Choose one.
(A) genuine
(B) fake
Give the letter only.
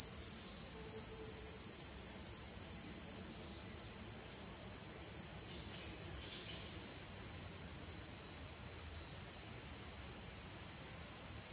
A